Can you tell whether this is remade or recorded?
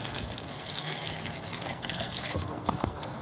remade